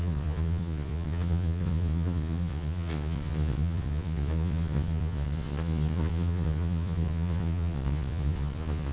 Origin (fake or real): fake